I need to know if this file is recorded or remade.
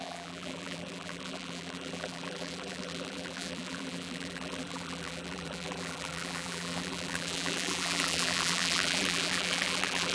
remade